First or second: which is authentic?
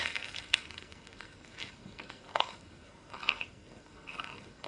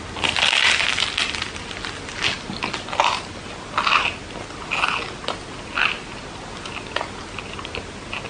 second